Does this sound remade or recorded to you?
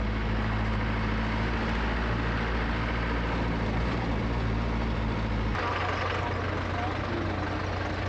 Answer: recorded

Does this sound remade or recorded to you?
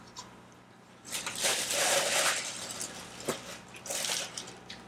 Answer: recorded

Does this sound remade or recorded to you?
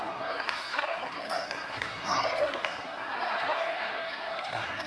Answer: remade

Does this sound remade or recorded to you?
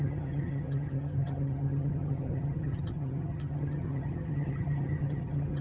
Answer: remade